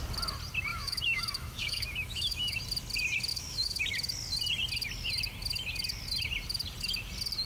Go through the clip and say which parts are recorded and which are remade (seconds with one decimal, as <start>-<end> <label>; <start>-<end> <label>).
0.0-0.7 recorded; 0.7-2.6 remade; 2.6-3.3 recorded; 3.3-3.8 remade; 3.8-7.5 recorded